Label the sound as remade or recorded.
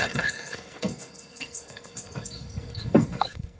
remade